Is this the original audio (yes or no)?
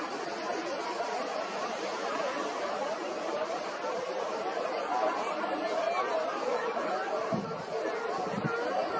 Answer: yes